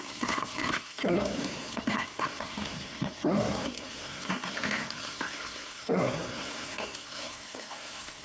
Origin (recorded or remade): remade